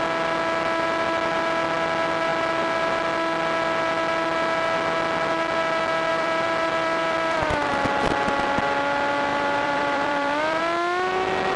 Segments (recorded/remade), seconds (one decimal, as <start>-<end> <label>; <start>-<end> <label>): 0.0-6.1 recorded; 6.1-7.7 remade; 7.7-9.3 recorded; 9.3-10.6 remade; 10.6-11.6 recorded